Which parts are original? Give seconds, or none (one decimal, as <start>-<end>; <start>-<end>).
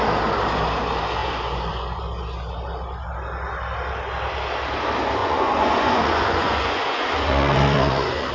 0.0-1.2; 2.0-5.2